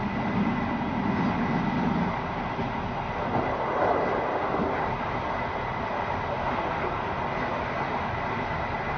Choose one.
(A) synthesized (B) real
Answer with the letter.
B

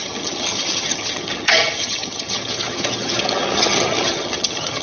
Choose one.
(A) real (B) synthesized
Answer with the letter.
B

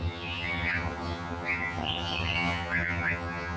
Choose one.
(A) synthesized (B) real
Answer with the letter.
A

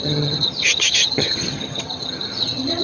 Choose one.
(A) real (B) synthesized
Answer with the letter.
B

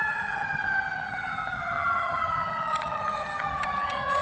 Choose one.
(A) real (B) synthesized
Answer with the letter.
B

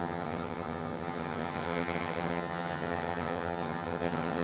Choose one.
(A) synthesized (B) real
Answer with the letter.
A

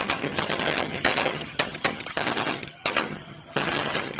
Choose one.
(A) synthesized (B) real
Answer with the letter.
A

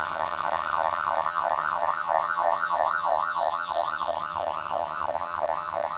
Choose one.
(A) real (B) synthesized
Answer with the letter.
B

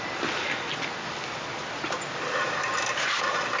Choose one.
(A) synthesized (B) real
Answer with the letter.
B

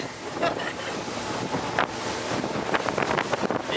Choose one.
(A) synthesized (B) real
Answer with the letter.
B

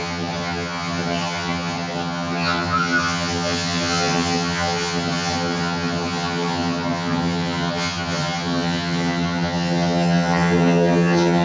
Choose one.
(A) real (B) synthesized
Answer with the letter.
B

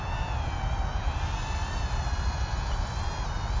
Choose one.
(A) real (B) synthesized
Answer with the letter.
A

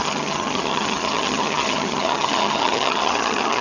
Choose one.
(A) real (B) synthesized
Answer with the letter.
B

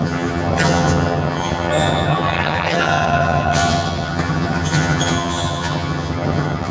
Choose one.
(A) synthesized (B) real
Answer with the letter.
A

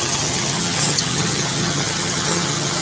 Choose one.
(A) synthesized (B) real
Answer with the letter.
A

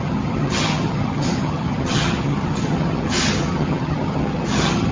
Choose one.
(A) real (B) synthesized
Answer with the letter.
B